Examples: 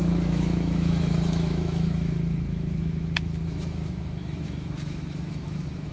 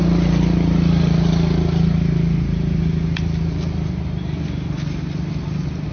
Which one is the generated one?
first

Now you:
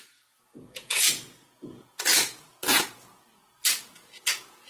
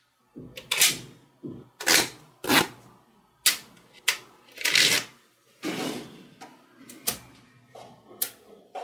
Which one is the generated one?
first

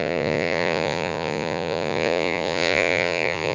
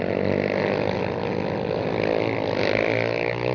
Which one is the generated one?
first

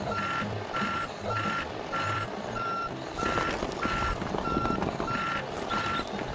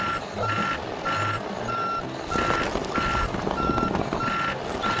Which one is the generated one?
first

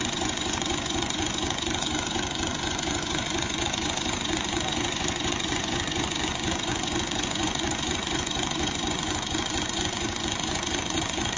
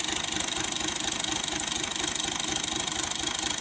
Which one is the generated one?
first